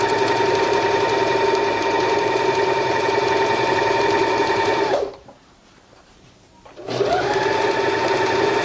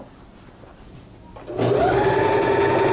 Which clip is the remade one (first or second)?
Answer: first